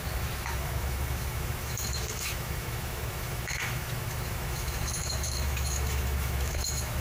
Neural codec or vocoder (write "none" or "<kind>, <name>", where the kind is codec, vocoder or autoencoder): autoencoder, DAC-VAE